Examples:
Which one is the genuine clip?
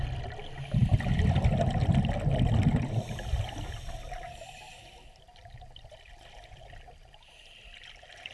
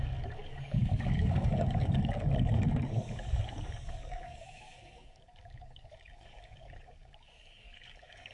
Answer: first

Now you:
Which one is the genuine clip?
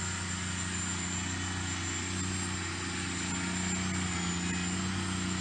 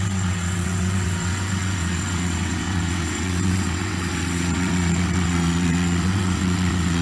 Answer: first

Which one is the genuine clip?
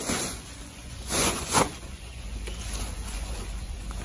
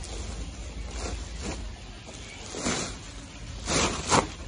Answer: second